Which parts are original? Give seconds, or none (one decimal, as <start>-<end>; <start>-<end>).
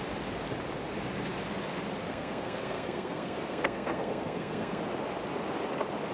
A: 0.0-2.0; 4.8-6.1